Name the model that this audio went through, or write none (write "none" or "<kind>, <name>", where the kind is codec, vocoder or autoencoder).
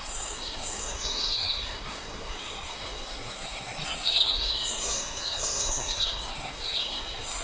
codec, SNAC